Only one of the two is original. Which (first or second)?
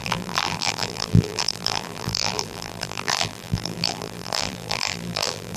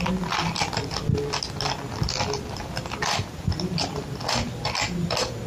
second